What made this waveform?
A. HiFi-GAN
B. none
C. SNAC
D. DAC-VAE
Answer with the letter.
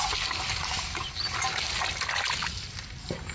B